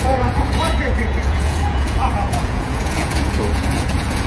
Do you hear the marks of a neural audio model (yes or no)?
yes